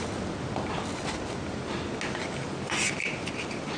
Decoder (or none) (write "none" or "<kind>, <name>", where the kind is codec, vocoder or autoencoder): none